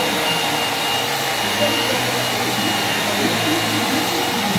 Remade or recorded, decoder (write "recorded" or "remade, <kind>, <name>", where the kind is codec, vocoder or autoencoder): recorded